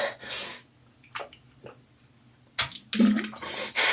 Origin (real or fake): real